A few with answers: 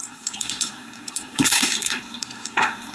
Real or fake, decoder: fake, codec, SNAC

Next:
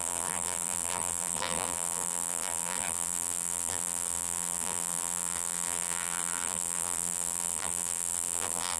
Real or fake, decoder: fake, vocoder, BigVGAN v2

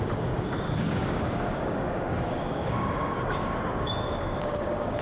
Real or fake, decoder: fake, codec, DAC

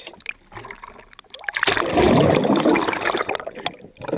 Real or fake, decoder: real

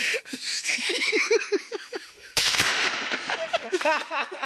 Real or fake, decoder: fake, autoencoder, DAC-VAE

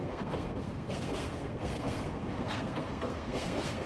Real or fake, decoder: fake, codec, SNAC